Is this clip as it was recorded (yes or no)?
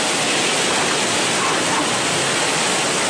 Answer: yes